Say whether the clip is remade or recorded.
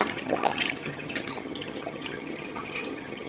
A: remade